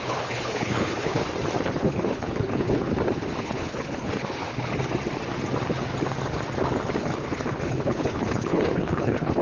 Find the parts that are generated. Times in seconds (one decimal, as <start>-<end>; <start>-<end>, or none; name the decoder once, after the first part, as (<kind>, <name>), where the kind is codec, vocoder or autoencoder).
0.0-1.2 (codec, HILCodec); 1.8-2.9; 3.4-4.7; 7.0-9.4